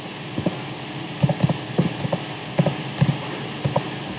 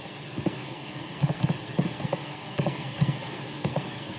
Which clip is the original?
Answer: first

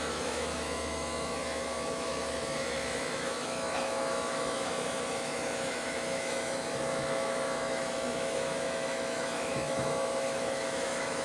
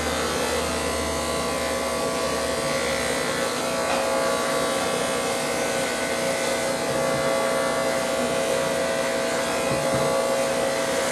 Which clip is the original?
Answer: second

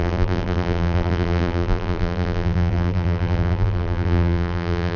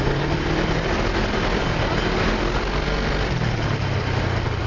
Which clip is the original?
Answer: second